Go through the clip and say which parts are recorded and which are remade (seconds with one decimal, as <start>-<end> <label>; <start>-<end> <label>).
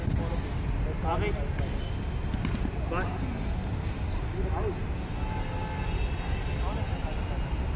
0.0-7.8 recorded